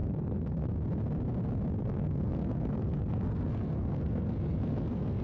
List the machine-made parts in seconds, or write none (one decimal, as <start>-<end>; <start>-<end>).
0.0-0.7; 1.8-5.2